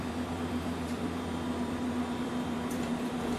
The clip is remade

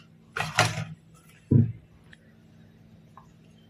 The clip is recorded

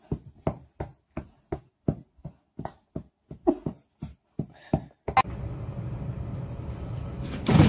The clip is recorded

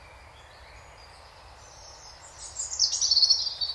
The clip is recorded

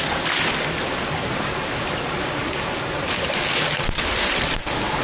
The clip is recorded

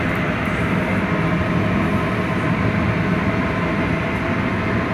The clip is recorded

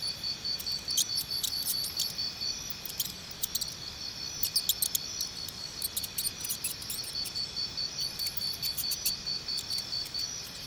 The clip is recorded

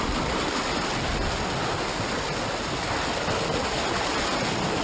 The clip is recorded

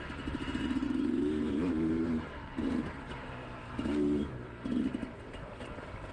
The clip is remade